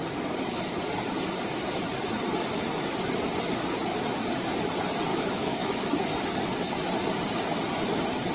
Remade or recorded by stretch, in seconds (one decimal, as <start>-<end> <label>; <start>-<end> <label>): 0.0-5.1 recorded; 5.1-5.8 remade; 5.8-8.3 recorded